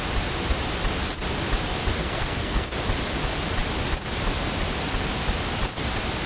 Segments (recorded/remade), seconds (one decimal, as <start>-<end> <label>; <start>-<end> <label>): 0.0-2.0 recorded; 2.0-2.7 remade; 2.7-6.3 recorded